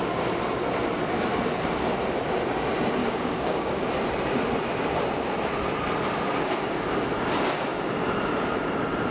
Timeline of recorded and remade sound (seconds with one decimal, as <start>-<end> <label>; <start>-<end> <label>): 0.0-3.0 recorded; 3.0-3.9 remade; 3.9-9.1 recorded